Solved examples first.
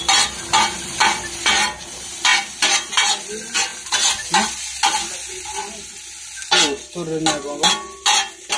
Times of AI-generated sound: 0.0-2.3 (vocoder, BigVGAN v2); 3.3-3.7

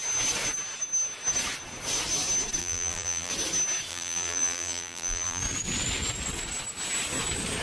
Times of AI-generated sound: 2.6-3.3 (vocoder, BigVGAN v2); 3.9-5.4

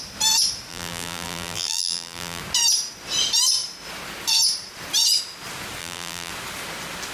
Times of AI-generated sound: 0.7-2.4 (vocoder, BigVGAN v2); 5.8-6.3

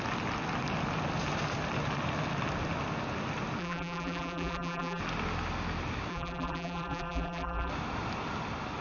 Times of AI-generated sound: 3.6-5.0 (vocoder, BigVGAN v2); 6.1-7.7

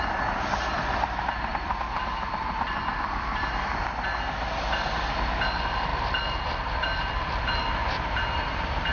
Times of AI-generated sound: 1.5-3.8 (vocoder, BigVGAN v2); 5.9-7.4